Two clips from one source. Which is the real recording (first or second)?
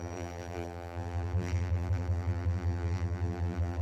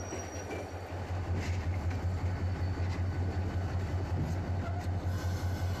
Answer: second